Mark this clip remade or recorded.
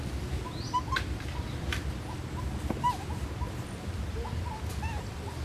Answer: recorded